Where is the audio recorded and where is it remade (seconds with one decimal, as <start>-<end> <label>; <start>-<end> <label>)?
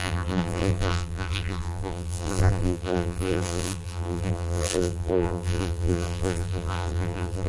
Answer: 0.0-7.5 remade